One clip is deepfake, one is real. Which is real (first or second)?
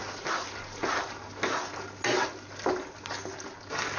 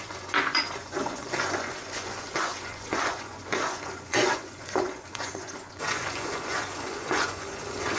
first